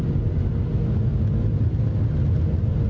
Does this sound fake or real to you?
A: real